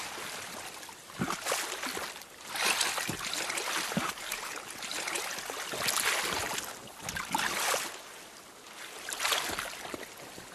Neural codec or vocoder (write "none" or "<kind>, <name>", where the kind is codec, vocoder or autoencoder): none